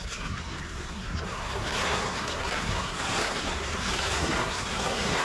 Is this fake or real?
fake